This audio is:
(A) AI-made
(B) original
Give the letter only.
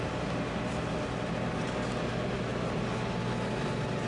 B